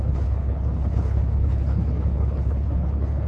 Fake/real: fake